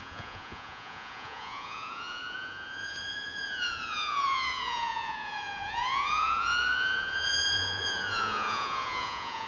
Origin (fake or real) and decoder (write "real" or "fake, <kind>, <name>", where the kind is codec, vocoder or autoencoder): fake, vocoder, Vocos